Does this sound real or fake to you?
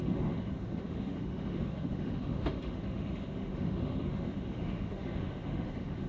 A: fake